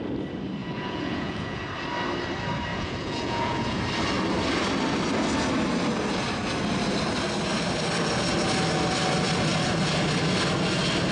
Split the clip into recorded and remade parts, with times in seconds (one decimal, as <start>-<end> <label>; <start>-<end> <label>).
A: 0.0-0.6 recorded; 0.6-1.7 remade; 1.7-2.7 recorded; 2.7-3.8 remade; 3.8-11.1 recorded